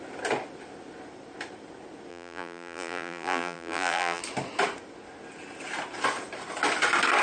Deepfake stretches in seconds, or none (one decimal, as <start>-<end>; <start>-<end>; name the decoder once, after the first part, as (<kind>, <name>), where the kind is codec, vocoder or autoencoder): 2.1-4.2 (vocoder, BigVGAN v2)